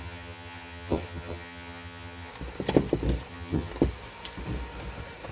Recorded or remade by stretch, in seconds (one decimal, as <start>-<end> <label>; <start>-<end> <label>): 0.0-2.3 remade; 2.3-3.3 recorded; 3.3-3.7 remade; 3.7-5.3 recorded